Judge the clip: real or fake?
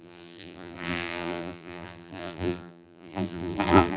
fake